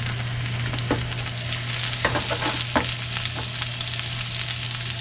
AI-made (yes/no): no